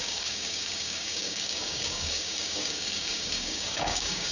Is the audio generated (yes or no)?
yes